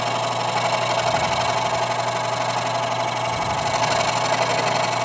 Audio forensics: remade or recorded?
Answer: recorded